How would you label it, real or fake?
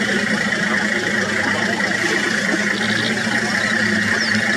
real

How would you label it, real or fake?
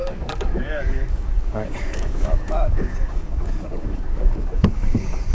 fake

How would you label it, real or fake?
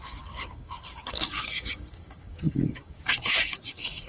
fake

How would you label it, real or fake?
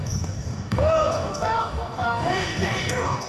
fake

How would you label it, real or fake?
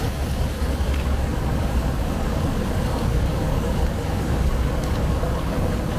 fake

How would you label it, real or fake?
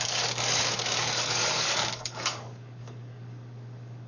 fake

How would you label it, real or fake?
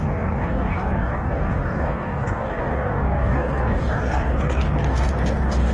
fake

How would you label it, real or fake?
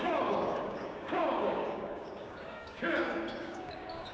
fake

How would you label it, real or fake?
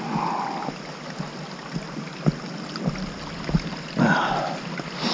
real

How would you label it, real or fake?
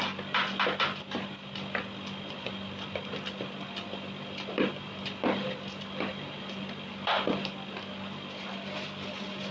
real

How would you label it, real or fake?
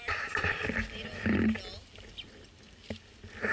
real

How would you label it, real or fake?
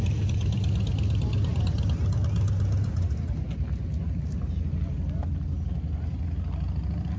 real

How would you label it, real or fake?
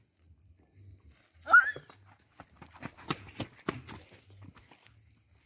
real